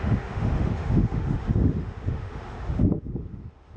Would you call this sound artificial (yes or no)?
yes